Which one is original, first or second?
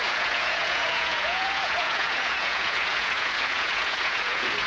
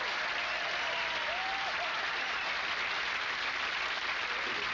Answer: second